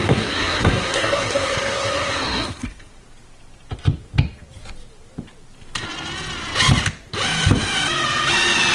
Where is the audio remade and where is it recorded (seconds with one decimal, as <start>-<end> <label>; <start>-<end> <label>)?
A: 0.0-2.9 remade; 2.9-8.7 recorded